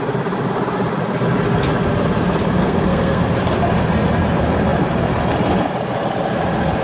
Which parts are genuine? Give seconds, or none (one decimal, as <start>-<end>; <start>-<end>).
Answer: 0.0-2.6; 3.2-6.8